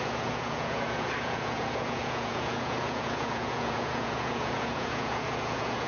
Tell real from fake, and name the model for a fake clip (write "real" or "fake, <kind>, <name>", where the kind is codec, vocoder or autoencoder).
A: fake, vocoder, Vocos